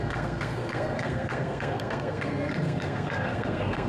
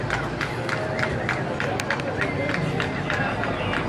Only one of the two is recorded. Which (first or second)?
second